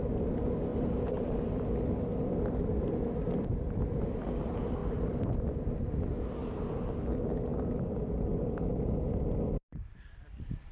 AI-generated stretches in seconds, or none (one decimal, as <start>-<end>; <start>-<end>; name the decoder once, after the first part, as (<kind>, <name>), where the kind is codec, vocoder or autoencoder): 0.7-1.5 (vocoder, BigVGAN v2)